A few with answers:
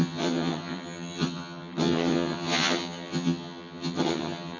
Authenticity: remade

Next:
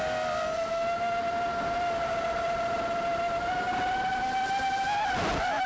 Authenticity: recorded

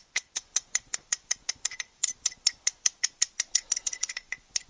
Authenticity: remade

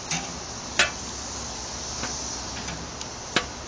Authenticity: recorded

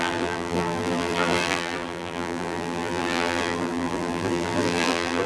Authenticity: remade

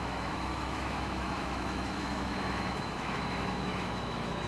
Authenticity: remade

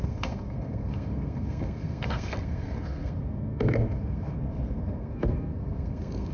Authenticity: remade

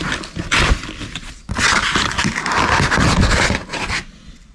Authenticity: recorded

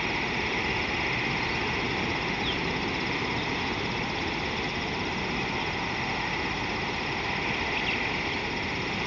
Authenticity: recorded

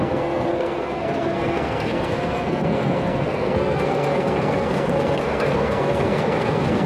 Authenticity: remade